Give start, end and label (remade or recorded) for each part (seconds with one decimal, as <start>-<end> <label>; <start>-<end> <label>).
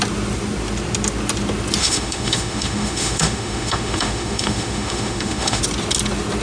0.0-1.8 recorded; 1.8-5.6 remade; 5.6-6.4 recorded